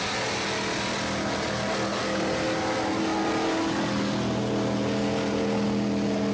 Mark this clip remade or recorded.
recorded